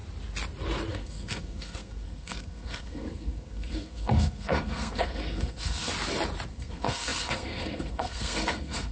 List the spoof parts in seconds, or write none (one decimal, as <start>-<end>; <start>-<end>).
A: 0.9-5.9; 6.5-8.9